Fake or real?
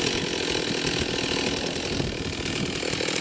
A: real